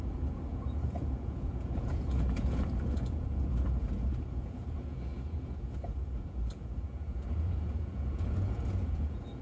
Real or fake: fake